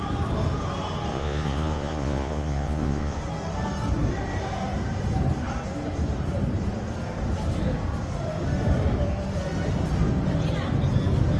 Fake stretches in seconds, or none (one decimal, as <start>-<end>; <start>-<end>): 1.1-3.2